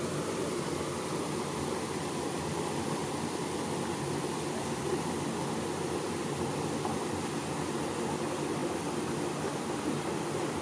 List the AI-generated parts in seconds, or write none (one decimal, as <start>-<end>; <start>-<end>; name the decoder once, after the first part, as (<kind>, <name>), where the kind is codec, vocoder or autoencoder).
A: none